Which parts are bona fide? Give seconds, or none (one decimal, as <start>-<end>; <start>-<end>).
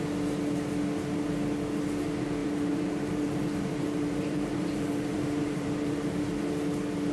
0.0-2.4; 6.2-7.1